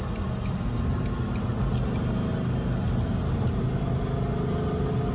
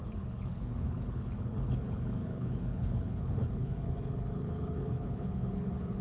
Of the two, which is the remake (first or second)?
second